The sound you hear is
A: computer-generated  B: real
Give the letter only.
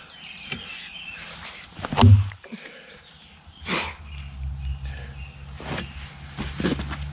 B